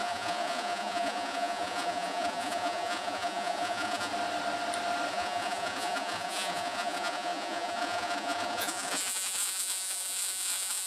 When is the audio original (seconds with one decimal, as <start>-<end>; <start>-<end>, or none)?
4.1-5.1